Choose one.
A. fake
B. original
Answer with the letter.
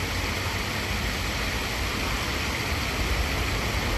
B